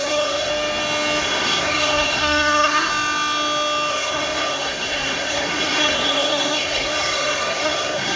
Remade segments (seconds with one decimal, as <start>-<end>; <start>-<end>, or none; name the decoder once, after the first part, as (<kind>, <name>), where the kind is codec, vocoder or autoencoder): 0.0-0.5 (codec, SNAC); 1.2-2.9; 3.9-8.2